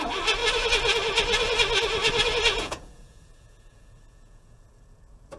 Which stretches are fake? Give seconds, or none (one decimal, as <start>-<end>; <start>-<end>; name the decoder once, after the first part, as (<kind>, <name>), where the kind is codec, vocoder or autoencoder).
2.5-5.4 (vocoder, Vocos)